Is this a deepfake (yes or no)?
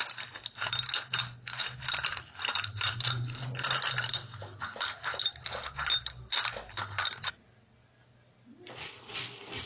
no